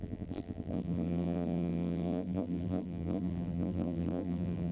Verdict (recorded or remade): remade